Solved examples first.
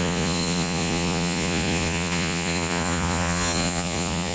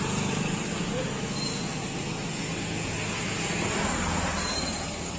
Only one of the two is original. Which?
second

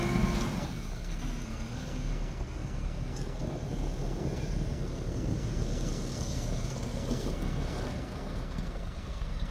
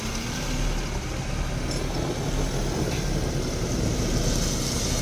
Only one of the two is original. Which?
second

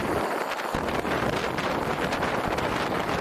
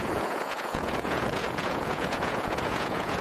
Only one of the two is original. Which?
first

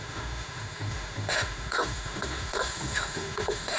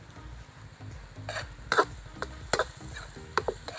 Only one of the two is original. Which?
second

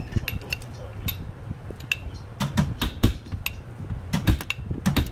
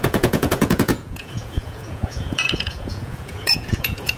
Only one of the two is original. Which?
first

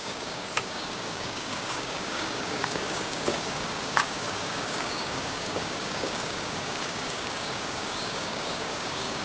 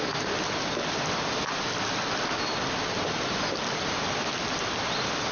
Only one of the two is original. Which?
second